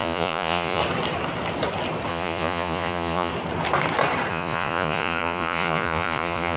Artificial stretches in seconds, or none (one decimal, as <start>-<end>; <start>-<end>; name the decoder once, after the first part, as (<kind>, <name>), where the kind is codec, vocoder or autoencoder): 0.0-0.8 (vocoder, Vocos); 2.1-3.3; 4.3-6.6